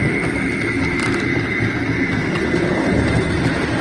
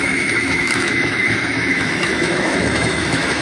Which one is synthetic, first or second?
second